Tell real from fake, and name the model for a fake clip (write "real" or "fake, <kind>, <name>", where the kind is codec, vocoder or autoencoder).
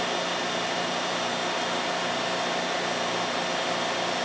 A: real